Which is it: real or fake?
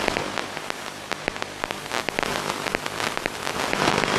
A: real